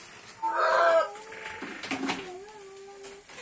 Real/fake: real